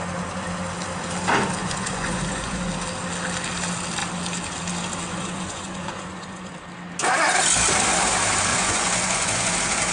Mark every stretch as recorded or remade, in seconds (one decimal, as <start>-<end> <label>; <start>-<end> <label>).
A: 0.0-1.6 recorded; 1.6-2.7 remade; 2.7-5.1 recorded; 5.1-6.5 remade; 6.5-8.5 recorded; 8.5-9.5 remade; 9.5-9.9 recorded